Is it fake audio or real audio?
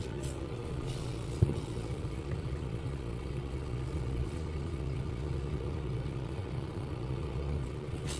fake